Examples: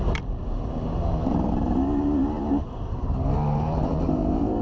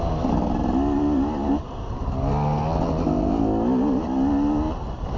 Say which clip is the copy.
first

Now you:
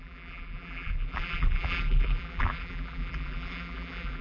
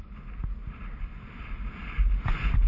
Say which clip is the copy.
first